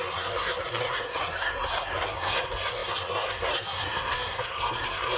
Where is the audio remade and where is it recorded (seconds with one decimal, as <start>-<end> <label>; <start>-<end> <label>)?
0.0-5.2 remade